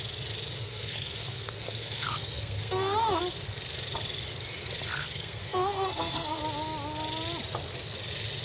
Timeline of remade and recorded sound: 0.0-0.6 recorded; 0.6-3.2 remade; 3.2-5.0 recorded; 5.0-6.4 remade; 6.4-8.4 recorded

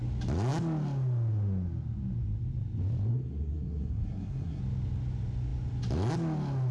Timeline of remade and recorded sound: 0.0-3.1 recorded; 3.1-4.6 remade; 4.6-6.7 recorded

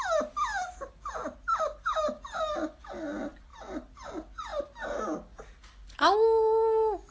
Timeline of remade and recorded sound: 0.0-7.1 recorded

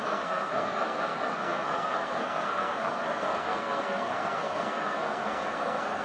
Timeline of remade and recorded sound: 0.0-6.0 remade

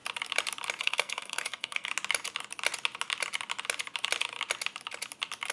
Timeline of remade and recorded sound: 0.0-0.8 recorded; 0.8-1.9 remade; 1.9-5.5 recorded

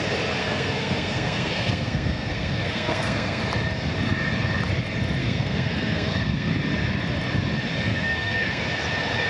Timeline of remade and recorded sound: 0.0-0.4 recorded; 0.4-3.4 remade; 3.4-5.2 recorded; 5.2-6.5 remade; 6.5-7.9 recorded; 7.9-8.6 remade; 8.6-9.3 recorded